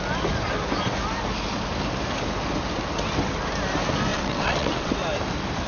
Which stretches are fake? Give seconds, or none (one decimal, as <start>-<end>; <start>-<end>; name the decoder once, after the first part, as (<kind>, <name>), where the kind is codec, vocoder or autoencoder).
4.1-4.9 (vocoder, WaveNeXt)